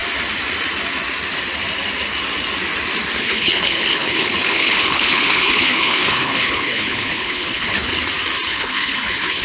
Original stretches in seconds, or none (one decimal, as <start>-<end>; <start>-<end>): 0.0-3.2; 7.9-8.5